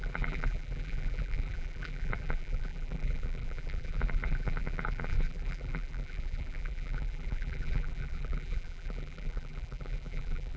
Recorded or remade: remade